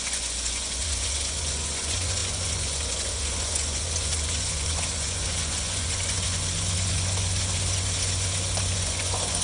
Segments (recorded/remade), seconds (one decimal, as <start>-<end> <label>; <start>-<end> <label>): 0.0-9.4 remade